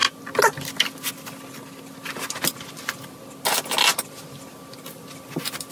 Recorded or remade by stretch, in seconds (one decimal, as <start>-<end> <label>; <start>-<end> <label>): 0.0-5.7 recorded